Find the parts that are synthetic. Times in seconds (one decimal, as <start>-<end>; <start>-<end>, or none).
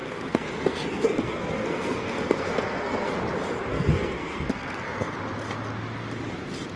0.0-3.1; 3.7-5.1